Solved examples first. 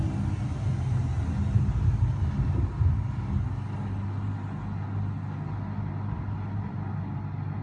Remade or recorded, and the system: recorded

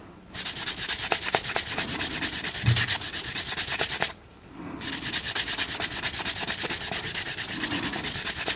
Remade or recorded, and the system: recorded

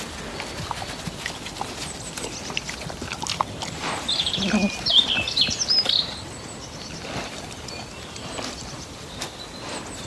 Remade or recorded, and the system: recorded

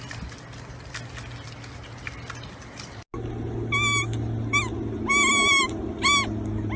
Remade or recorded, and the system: recorded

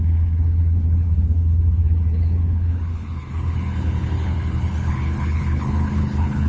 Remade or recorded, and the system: remade, codec, HILCodec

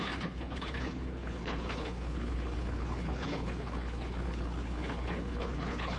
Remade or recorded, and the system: remade, codec, HILCodec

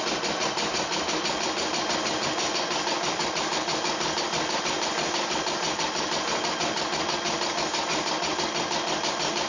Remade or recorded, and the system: recorded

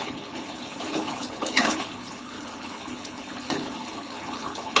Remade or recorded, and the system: remade, codec, HILCodec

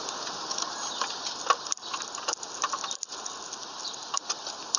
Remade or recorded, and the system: recorded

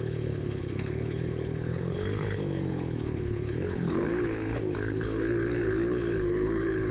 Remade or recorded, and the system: remade, codec, HILCodec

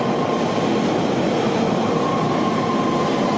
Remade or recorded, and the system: recorded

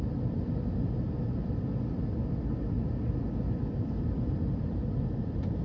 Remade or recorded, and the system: recorded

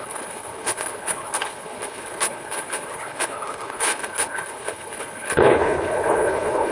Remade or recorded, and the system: remade, codec, HILCodec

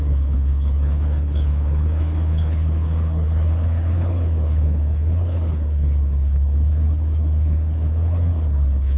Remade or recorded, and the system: remade, codec, HILCodec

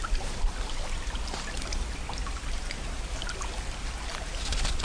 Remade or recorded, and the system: recorded